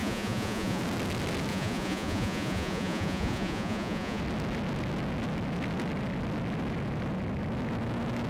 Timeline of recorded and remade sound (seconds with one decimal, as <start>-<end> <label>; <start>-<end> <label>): 0.0-0.8 remade; 0.8-1.5 recorded; 1.5-4.2 remade; 4.2-8.3 recorded